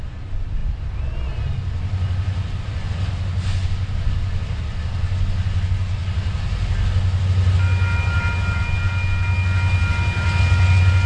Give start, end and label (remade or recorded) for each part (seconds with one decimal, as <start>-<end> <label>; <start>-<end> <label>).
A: 0.0-11.1 recorded